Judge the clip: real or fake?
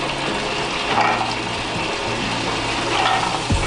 real